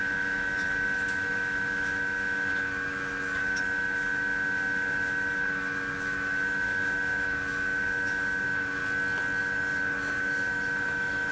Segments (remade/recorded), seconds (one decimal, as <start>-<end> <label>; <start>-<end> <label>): 0.0-8.8 remade; 8.8-9.4 recorded; 9.4-11.3 remade